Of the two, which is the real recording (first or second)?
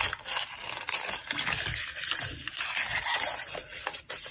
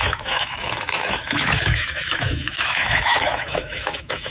first